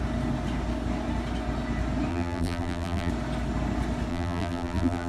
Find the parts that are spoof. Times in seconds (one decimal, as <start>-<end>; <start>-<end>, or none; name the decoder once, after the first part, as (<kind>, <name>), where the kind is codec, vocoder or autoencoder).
2.1-3.1 (vocoder, BigVGAN v2); 4.1-5.1